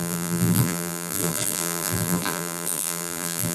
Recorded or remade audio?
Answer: remade